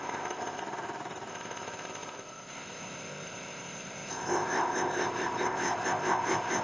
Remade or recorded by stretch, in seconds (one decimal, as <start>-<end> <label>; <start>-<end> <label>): 0.0-0.6 remade; 0.6-1.3 recorded; 1.3-6.6 remade